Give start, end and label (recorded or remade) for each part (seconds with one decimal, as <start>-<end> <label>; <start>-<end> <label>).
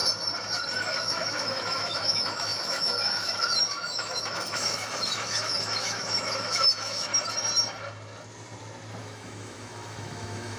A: 0.0-0.8 recorded; 0.8-7.1 remade; 7.1-9.0 recorded; 9.0-10.6 remade